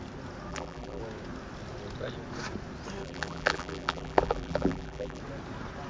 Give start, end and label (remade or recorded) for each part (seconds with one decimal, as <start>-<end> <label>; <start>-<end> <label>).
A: 0.0-0.5 recorded; 0.5-1.0 remade; 1.0-3.0 recorded; 3.0-5.2 remade; 5.2-5.9 recorded